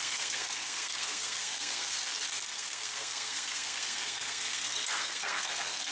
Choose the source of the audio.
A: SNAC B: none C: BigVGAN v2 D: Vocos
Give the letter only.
A